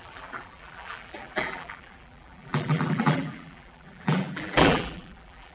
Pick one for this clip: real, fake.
fake